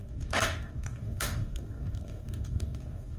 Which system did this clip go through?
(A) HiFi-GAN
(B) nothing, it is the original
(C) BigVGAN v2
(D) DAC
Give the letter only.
D